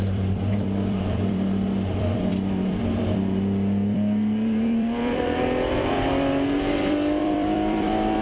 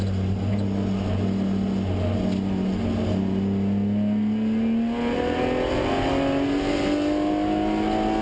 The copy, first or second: first